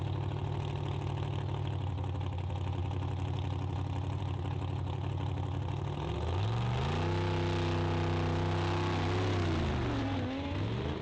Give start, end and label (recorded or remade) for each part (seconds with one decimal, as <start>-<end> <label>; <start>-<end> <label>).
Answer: 0.0-11.0 recorded